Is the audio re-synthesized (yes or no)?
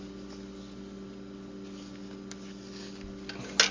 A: no